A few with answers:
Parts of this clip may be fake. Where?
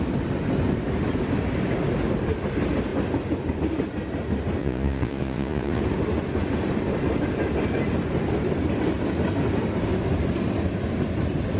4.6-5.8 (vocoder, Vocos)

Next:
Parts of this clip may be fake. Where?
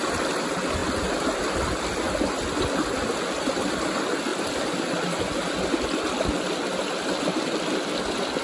none